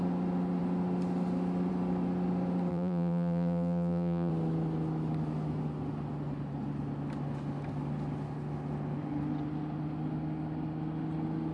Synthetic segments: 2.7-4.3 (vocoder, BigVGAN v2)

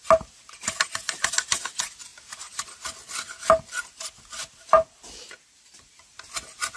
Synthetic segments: none

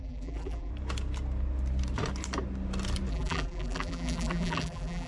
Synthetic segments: 0.0-0.7 (vocoder, BigVGAN v2); 3.1-5.1

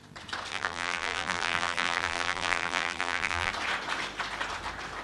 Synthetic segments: 0.5-3.5 (vocoder, BigVGAN v2)